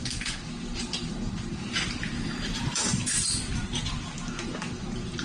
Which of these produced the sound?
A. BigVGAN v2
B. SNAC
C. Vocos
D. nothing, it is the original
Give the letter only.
A